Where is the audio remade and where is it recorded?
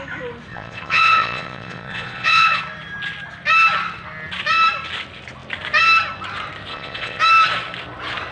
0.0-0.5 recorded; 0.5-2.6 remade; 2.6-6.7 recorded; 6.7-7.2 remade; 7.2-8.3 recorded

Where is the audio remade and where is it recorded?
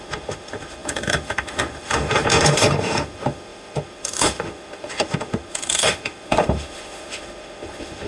0.0-8.1 remade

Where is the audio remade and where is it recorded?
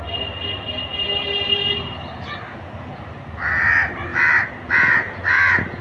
0.0-5.8 recorded